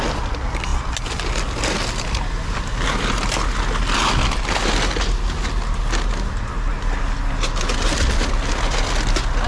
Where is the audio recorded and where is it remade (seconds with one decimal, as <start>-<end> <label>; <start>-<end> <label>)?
0.0-9.5 recorded